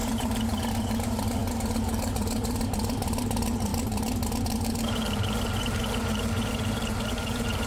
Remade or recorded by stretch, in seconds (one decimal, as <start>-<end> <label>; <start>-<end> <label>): 0.0-7.7 remade

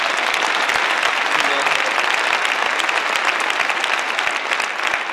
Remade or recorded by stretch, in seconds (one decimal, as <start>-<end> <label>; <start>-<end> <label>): 0.0-5.1 recorded

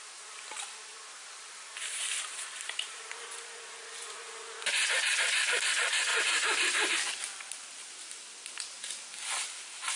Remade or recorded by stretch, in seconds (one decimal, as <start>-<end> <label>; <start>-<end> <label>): 0.0-0.9 recorded; 0.9-3.1 remade; 3.1-6.1 recorded; 6.1-7.1 remade; 7.1-10.0 recorded

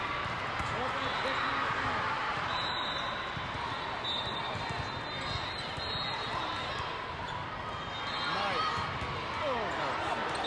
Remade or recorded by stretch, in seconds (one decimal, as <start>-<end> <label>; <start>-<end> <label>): 0.0-2.2 recorded; 2.2-3.2 remade; 3.2-10.5 recorded

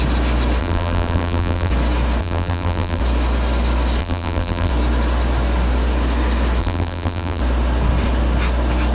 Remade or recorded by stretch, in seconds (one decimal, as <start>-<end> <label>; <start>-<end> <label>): 0.0-0.6 recorded; 0.6-1.7 remade; 1.7-2.2 recorded; 2.2-3.0 remade; 3.0-4.0 recorded; 4.0-4.7 remade; 4.7-6.6 recorded; 6.6-7.4 remade; 7.4-8.9 recorded

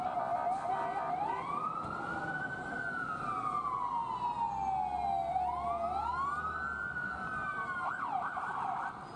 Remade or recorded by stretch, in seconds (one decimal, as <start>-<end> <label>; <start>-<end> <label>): 0.0-4.0 remade; 4.0-6.4 recorded; 6.4-9.2 remade